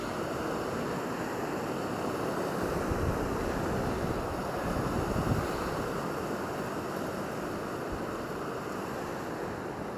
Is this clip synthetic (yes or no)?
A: no